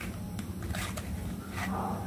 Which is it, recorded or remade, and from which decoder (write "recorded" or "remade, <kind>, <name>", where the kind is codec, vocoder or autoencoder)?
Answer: recorded